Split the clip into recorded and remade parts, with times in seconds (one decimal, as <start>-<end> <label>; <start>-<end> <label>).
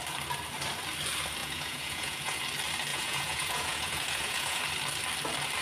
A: 0.0-1.4 recorded; 1.4-2.4 remade; 2.4-2.9 recorded; 2.9-4.6 remade; 4.6-5.6 recorded